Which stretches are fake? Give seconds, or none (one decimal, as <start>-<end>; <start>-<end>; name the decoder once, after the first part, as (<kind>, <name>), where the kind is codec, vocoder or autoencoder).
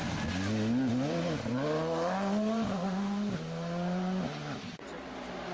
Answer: none